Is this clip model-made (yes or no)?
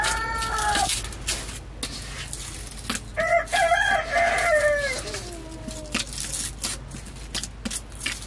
no